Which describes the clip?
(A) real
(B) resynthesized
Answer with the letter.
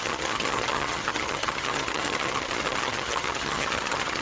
B